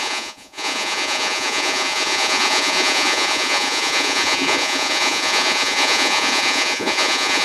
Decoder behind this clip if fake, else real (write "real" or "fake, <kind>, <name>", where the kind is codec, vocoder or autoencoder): fake, vocoder, Vocos